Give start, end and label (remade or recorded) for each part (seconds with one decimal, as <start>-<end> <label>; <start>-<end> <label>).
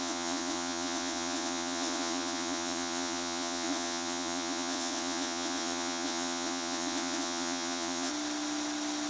0.0-8.1 remade; 8.1-9.1 recorded